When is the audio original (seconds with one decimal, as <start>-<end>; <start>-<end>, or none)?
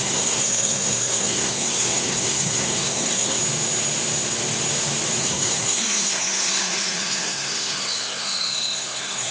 3.4-5.2